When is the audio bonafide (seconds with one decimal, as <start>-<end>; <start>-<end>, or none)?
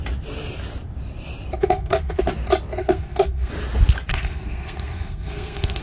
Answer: 0.0-1.6; 2.3-2.8; 3.5-4.1